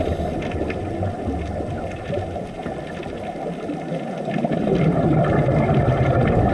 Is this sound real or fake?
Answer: real